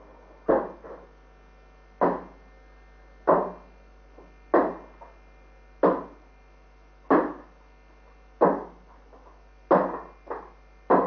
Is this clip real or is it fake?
real